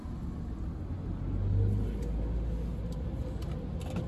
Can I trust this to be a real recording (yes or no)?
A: yes